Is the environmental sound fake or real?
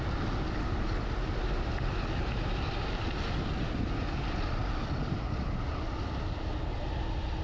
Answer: real